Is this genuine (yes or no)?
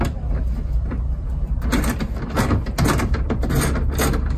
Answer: yes